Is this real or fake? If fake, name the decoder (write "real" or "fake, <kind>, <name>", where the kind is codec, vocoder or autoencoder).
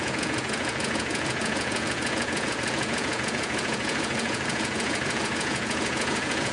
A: fake, vocoder, Vocos